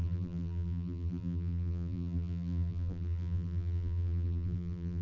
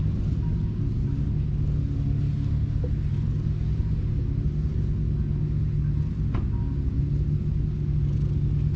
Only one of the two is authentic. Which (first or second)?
second